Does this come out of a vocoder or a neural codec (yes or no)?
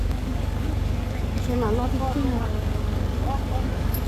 yes